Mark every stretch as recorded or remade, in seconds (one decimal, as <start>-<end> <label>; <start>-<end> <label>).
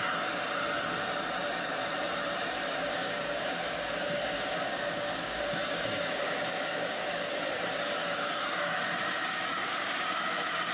0.0-2.9 recorded; 2.9-7.3 remade; 7.3-8.1 recorded; 8.1-8.7 remade; 8.7-9.3 recorded; 9.3-10.7 remade